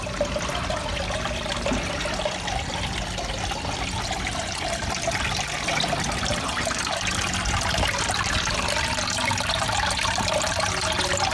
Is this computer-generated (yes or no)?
no